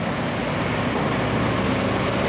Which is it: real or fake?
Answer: real